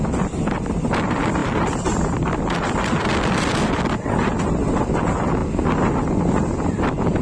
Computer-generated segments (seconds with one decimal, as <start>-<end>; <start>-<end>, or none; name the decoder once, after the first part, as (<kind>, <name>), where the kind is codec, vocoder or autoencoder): none